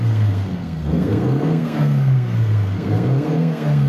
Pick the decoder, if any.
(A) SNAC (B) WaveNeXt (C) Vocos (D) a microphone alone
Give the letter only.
A